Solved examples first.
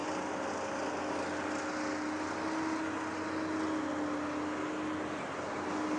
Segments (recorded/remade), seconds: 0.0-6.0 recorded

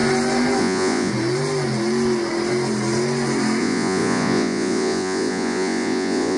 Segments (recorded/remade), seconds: 0.0-0.6 recorded; 0.6-1.1 remade; 1.1-3.6 recorded; 3.6-6.4 remade

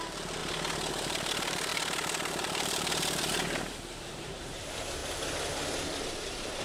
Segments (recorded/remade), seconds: 0.0-0.4 remade; 0.4-0.9 recorded; 0.9-5.0 remade; 5.0-6.0 recorded; 6.0-6.6 remade

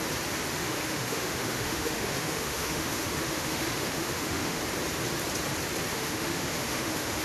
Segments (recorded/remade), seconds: 0.0-0.6 recorded; 0.6-4.6 remade; 4.6-5.9 recorded; 5.9-7.2 remade

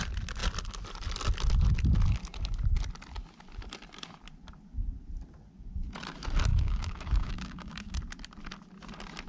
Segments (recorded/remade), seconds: 0.0-6.5 recorded; 6.5-8.0 remade; 8.0-9.3 recorded

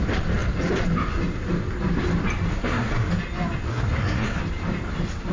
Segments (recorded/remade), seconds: 0.0-2.5 recorded; 2.5-3.1 remade; 3.1-3.7 recorded; 3.7-4.4 remade; 4.4-5.3 recorded